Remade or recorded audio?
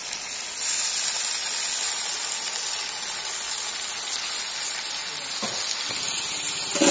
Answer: recorded